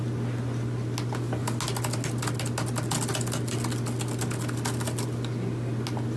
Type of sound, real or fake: real